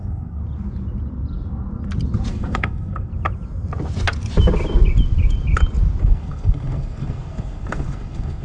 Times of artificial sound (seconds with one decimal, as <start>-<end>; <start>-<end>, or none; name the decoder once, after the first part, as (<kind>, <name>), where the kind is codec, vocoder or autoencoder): 0.0-0.4 (codec, SNAC); 2.3-3.1; 6.0-8.4